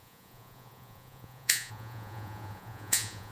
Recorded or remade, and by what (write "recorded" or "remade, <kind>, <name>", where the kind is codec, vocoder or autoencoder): remade, vocoder, Vocos